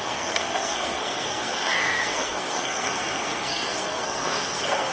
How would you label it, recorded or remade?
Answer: remade